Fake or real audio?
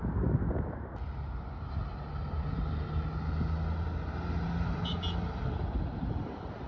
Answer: real